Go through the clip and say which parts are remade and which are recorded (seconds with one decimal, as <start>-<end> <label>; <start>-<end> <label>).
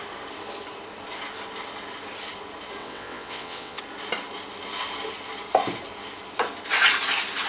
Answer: 0.0-2.8 recorded; 2.8-3.8 remade; 3.8-7.5 recorded